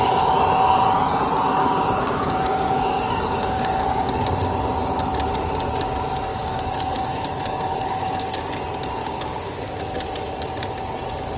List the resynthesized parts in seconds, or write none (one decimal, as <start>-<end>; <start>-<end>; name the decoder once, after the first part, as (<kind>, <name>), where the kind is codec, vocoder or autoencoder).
1.6-4.1 (codec, DAC); 6.3-8.4; 9.0-9.8